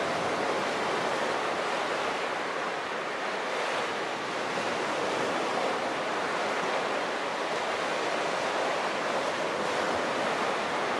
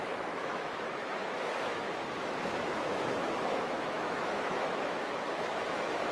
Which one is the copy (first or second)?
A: second